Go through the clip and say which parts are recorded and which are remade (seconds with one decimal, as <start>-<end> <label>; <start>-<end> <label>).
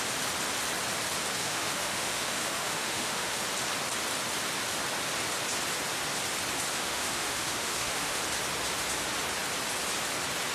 0.0-1.4 recorded; 1.4-3.4 remade; 3.4-6.7 recorded; 6.7-8.2 remade; 8.2-10.5 recorded